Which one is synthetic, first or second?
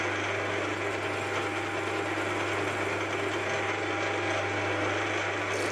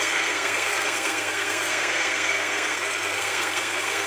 second